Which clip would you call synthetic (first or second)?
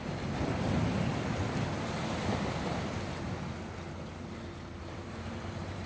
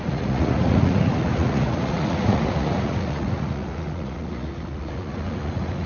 second